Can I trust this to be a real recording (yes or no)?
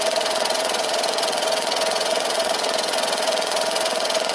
no